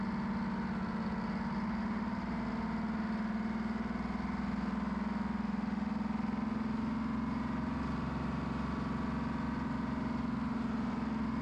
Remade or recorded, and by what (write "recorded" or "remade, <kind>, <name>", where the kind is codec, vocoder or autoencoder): recorded